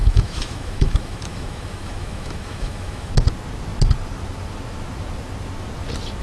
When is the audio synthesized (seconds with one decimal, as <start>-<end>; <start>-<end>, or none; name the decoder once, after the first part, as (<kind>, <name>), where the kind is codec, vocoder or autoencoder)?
0.0-3.1 (autoencoder, DAC-VAE)